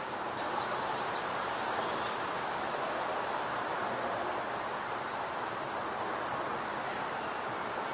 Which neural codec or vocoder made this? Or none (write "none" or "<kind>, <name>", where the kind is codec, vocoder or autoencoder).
none